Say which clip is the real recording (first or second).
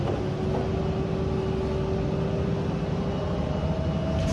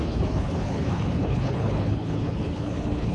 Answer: first